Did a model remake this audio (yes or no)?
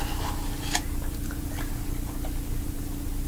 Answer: no